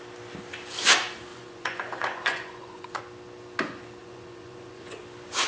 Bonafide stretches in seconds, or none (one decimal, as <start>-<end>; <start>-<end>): 0.0-1.3; 3.0-4.0; 5.0-5.5